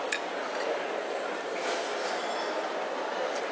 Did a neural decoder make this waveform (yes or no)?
no